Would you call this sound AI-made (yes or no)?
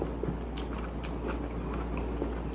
no